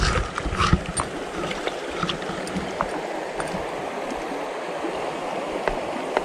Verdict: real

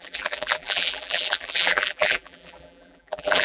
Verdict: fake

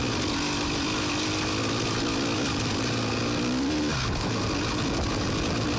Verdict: real